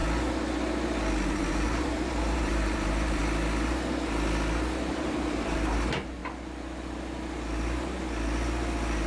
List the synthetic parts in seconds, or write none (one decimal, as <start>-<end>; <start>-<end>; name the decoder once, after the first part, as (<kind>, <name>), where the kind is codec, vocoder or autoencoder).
1.3-3.2 (vocoder, BigVGAN v2); 4.9-6.2

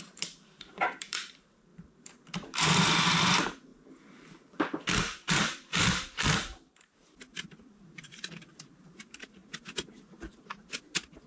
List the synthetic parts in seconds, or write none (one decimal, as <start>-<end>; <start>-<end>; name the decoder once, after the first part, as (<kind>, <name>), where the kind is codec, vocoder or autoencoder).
0.0-3.7 (vocoder, BigVGAN v2); 4.9-9.4; 10.3-11.3

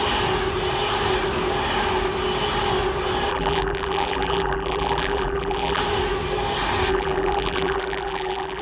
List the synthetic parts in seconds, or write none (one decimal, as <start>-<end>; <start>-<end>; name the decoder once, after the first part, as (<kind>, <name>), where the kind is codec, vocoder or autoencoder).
3.3-5.8 (vocoder, BigVGAN v2); 6.9-8.6

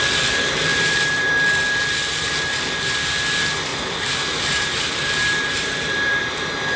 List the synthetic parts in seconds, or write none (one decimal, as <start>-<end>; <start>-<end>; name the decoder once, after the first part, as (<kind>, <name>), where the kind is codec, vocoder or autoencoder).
0.7-1.3 (vocoder, BigVGAN v2); 3.7-6.2